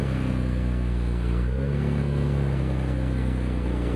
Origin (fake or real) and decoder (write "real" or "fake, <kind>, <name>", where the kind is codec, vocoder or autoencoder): fake, codec, SNAC